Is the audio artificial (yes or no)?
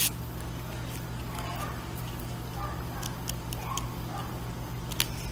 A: no